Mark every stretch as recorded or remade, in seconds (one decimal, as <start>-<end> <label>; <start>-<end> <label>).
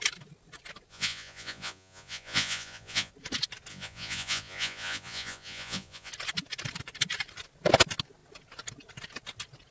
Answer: 0.0-0.9 recorded; 0.9-3.1 remade; 3.1-3.7 recorded; 3.7-6.1 remade; 6.1-9.7 recorded